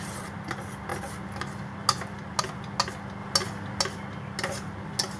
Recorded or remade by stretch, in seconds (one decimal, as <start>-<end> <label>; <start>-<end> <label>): 0.0-5.2 recorded